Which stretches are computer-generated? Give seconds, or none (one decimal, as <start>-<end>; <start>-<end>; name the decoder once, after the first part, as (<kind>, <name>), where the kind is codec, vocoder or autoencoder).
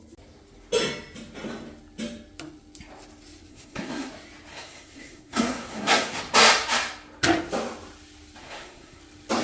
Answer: 3.5-4.1 (codec, SNAC); 4.5-6.2; 8.4-9.0